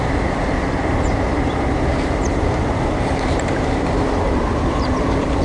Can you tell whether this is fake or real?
fake